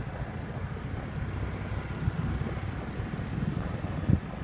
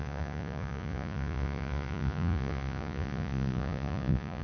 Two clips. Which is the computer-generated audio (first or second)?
second